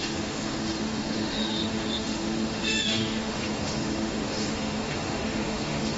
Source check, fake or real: fake